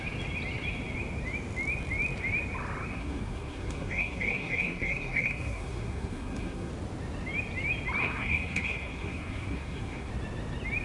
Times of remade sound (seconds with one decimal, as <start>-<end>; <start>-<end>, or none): 2.9-6.7; 8.0-10.1